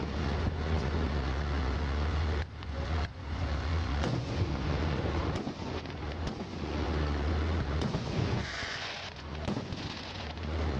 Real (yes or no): no